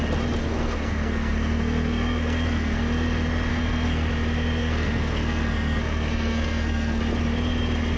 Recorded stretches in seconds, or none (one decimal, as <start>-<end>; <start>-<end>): 0.0-0.4; 2.8-3.5; 4.1-4.6; 7.0-8.0